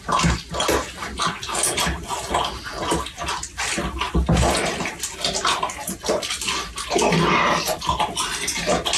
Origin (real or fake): real